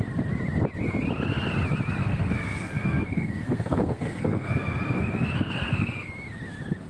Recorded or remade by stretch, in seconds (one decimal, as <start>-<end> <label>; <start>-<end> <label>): 0.0-2.0 recorded; 2.0-6.1 remade; 6.1-6.9 recorded

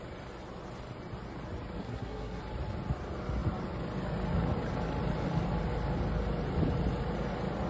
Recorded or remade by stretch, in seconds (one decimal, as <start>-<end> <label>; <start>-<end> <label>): 0.0-1.8 recorded; 1.8-2.4 remade; 2.4-7.7 recorded